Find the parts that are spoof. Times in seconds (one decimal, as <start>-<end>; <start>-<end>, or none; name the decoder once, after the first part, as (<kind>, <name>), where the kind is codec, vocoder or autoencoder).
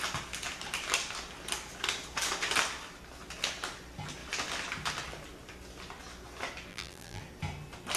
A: 6.7-7.2 (vocoder, BigVGAN v2)